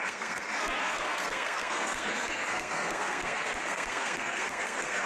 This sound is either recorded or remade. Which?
remade